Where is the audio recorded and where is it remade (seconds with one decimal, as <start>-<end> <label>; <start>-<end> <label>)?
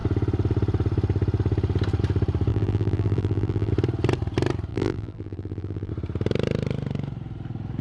0.0-2.5 recorded; 2.5-3.7 remade; 3.7-4.7 recorded; 4.7-5.9 remade; 5.9-7.8 recorded